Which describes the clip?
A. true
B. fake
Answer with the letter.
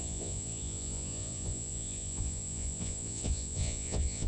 B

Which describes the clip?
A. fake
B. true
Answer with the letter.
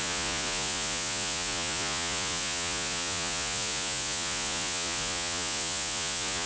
A